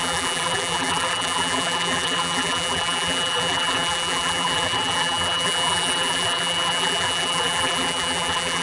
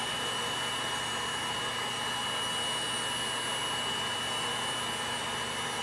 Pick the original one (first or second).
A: second